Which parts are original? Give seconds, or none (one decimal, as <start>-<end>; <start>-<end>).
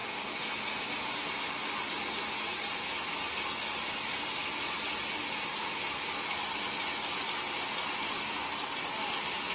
0.0-9.5